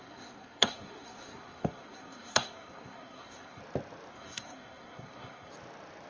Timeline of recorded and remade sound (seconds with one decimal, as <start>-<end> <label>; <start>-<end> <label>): 0.0-3.6 remade; 3.6-4.1 recorded; 4.1-5.5 remade; 5.5-6.1 recorded